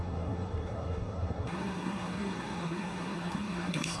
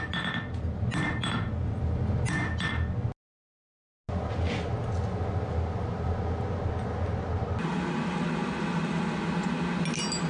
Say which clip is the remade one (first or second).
first